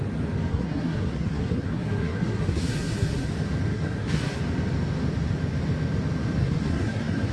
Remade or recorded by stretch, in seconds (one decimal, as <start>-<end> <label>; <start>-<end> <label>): 0.0-0.5 recorded; 0.5-3.3 remade; 3.3-3.7 recorded; 3.7-4.4 remade; 4.4-6.4 recorded; 6.4-7.3 remade